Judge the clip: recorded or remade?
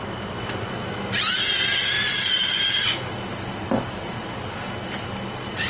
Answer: recorded